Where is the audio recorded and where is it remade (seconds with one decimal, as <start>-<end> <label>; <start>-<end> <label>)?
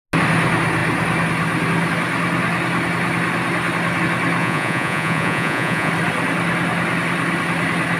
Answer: 0.0-4.4 recorded; 4.4-5.9 remade; 5.9-8.0 recorded